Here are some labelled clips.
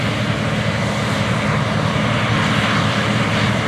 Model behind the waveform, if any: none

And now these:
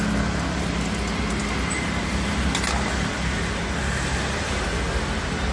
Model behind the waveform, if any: none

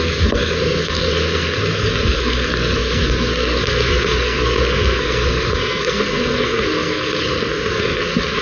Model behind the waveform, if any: codec, SNAC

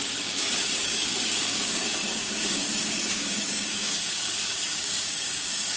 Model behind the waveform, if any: codec, DAC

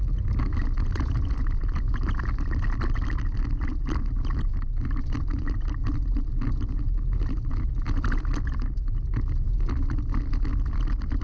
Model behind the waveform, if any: none